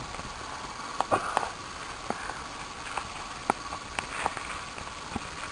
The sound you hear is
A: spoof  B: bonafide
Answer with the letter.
B